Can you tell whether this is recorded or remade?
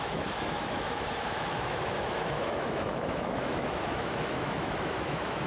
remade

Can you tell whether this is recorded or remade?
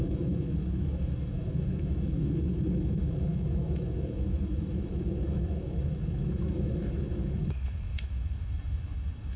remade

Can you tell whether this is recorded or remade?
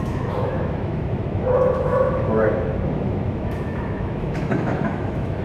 remade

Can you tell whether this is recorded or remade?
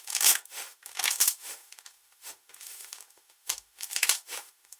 remade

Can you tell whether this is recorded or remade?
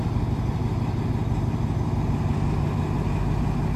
recorded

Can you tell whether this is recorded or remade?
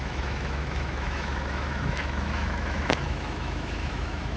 remade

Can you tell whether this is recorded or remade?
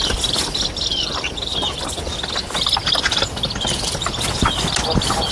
recorded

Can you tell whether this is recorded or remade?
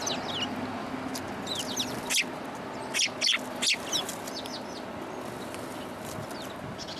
recorded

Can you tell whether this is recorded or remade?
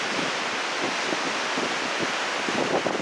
recorded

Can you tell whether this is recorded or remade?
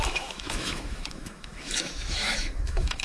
remade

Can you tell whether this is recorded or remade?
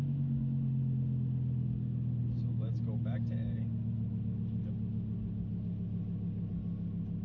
recorded